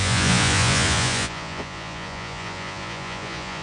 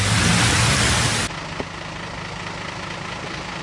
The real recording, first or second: second